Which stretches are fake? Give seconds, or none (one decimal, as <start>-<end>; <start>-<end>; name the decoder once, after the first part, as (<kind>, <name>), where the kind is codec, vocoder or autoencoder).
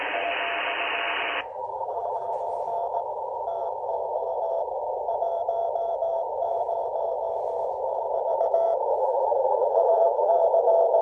1.5-2.3 (vocoder, BigVGAN v2); 9.0-10.4